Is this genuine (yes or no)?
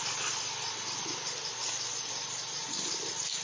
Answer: no